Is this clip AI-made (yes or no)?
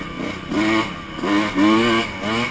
no